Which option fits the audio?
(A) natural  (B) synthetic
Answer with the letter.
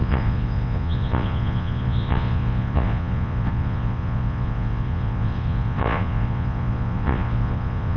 B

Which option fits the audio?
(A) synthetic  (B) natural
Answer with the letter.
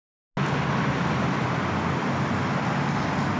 B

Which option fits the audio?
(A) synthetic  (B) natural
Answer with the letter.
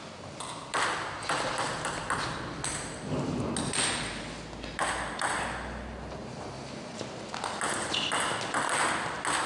B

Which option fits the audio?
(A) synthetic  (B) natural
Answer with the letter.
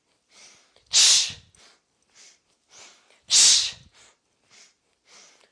B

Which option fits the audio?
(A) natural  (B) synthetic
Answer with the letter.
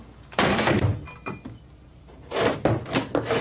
A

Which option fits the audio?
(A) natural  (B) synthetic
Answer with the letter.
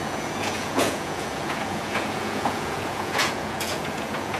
B